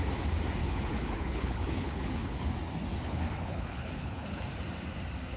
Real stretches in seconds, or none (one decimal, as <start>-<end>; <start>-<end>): 0.0-0.6; 2.4-2.9; 4.4-5.4